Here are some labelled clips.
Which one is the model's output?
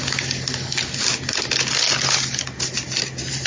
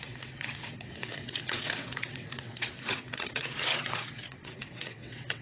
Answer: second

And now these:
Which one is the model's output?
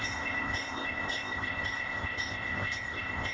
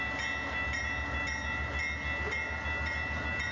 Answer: first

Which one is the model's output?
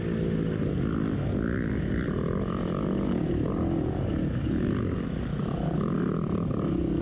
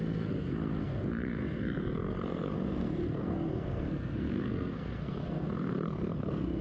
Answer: second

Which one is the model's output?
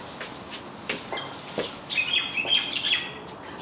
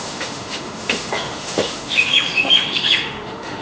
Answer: second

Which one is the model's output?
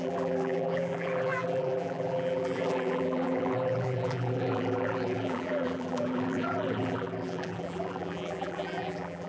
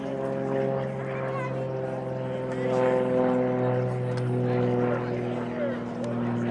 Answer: first